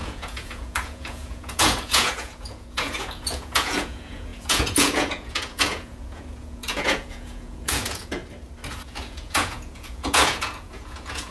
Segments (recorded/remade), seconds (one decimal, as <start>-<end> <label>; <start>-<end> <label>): 0.0-8.2 remade; 8.2-8.7 recorded; 8.7-11.3 remade